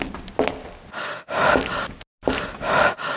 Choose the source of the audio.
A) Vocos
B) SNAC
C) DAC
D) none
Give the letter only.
D